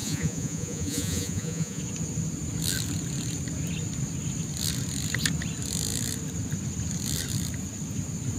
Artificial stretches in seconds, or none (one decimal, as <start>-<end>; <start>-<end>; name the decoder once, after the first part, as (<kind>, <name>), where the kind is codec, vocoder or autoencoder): 0.0-1.8 (vocoder, Vocos)